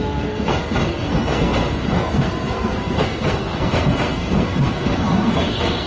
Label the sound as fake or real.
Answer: fake